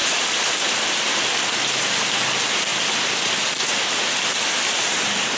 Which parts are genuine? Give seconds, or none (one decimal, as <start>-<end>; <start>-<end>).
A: 0.6-5.4